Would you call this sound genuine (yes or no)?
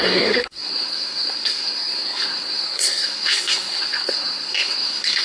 no